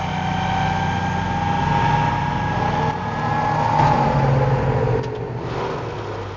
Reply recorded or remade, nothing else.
recorded